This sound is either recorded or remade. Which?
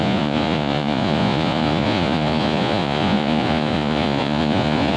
remade